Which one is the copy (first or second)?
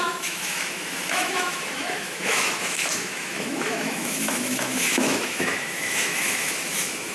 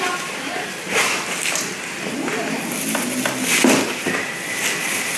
first